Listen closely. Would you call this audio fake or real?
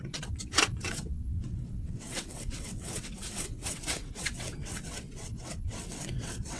fake